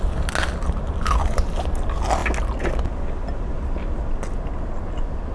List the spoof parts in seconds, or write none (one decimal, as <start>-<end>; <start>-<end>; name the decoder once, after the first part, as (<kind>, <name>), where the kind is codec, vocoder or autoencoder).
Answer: none